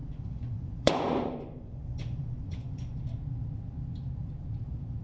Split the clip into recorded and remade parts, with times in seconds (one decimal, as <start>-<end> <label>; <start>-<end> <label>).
0.0-3.0 remade; 3.0-5.0 recorded